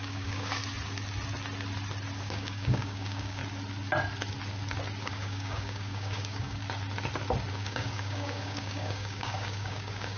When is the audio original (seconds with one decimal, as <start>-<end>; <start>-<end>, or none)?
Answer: 0.6-2.2; 3.4-5.0; 6.6-7.5